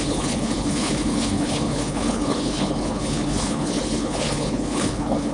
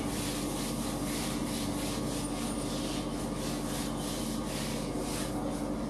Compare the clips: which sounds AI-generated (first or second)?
first